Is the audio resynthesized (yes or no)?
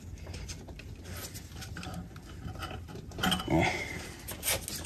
no